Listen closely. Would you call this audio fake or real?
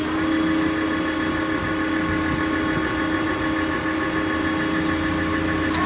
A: real